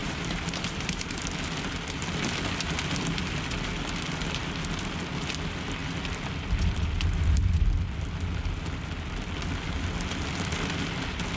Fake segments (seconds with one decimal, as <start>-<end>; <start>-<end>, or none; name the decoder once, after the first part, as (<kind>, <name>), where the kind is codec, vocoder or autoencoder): 0.0-1.2 (vocoder, BigVGAN v2)